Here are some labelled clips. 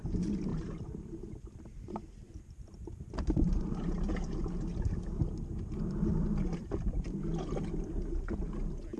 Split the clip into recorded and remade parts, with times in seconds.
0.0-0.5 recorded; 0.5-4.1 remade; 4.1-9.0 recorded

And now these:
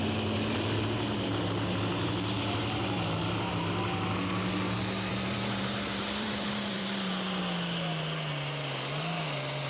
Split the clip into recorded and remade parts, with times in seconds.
0.0-5.1 recorded; 5.1-7.4 remade; 7.4-9.7 recorded

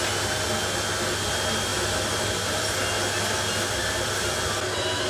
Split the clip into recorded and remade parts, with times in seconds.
0.0-5.1 recorded

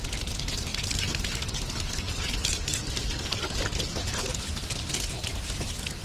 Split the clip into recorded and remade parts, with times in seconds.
0.0-0.7 remade; 0.7-2.9 recorded; 2.9-4.3 remade; 4.3-5.1 recorded; 5.1-6.0 remade

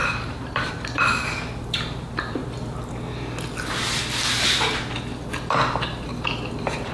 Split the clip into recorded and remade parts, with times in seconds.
0.0-2.4 remade; 2.4-6.5 recorded; 6.5-6.9 remade